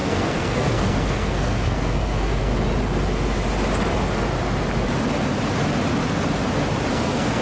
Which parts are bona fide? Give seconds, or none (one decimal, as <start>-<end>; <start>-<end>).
2.5-6.9